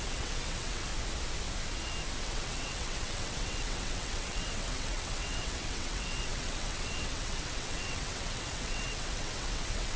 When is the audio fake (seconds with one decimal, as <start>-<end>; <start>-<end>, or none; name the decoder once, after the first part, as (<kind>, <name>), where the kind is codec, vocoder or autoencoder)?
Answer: 0.0-0.9 (vocoder, WaveNeXt); 2.2-10.0